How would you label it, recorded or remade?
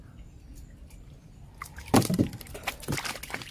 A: recorded